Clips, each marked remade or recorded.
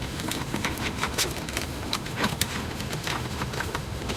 remade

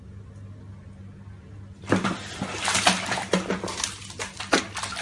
recorded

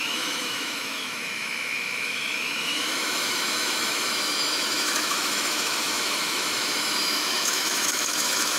remade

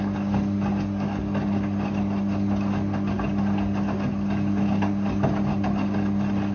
recorded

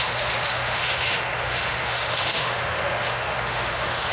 remade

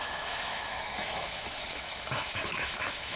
remade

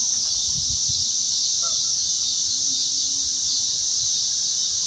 recorded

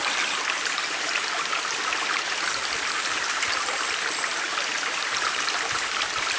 recorded